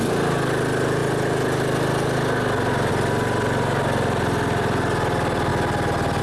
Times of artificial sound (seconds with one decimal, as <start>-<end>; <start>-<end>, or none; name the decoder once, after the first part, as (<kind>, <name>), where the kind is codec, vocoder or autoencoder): none